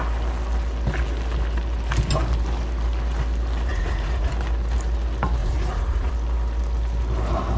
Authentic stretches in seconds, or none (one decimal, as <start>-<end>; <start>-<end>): 0.0-3.7; 4.3-5.4; 6.1-7.6

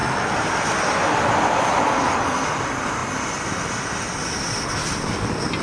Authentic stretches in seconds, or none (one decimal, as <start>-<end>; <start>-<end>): 0.0-2.6; 3.0-4.4